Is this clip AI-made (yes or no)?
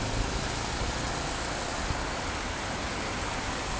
no